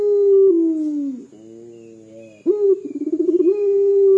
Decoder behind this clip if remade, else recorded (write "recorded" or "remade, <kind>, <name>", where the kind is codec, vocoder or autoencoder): recorded